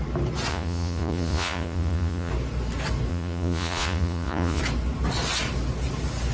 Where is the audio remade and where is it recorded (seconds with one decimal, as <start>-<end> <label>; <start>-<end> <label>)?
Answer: 0.0-0.5 recorded; 0.5-2.3 remade; 2.3-3.1 recorded; 3.1-4.6 remade; 4.6-6.3 recorded